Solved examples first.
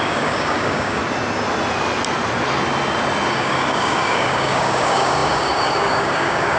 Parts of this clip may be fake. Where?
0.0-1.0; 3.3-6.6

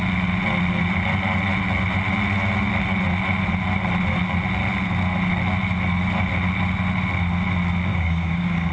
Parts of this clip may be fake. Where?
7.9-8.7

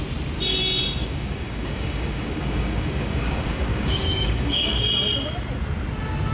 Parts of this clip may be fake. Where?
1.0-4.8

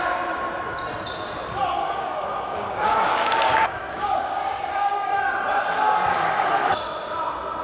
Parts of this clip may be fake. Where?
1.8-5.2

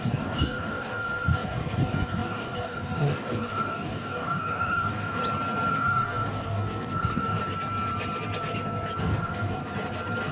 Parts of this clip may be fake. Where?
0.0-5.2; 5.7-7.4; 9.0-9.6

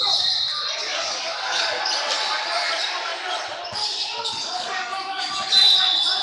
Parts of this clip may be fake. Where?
0.8-1.8; 4.2-5.3

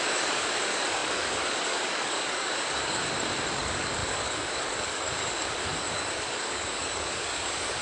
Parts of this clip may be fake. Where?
0.0-3.0; 3.5-7.8